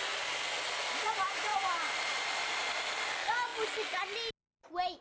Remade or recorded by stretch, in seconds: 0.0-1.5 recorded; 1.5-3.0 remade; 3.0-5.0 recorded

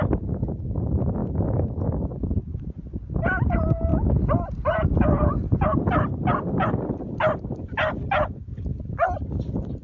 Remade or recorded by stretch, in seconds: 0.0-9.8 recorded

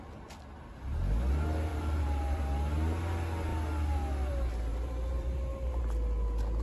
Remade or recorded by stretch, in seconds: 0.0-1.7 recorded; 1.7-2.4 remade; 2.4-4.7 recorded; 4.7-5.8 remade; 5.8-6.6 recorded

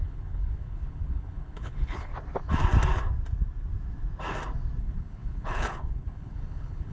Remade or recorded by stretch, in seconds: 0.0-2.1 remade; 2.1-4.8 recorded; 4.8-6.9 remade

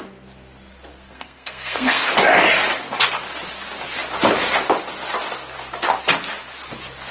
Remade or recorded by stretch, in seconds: 0.0-0.9 recorded; 0.9-2.1 remade; 2.1-7.1 recorded

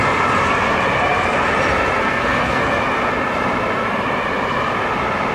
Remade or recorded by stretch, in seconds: 0.0-2.0 recorded; 2.0-2.6 remade; 2.6-5.3 recorded

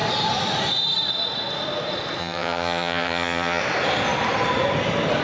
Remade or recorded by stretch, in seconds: 0.0-2.2 recorded; 2.2-3.6 remade; 3.6-5.2 recorded

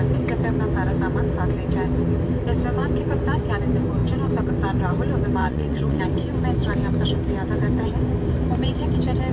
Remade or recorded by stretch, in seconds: 0.0-5.4 recorded; 5.4-6.0 remade; 6.0-9.3 recorded